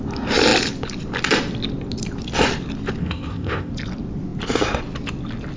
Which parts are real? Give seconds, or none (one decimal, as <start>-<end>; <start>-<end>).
0.0-3.0; 3.7-5.6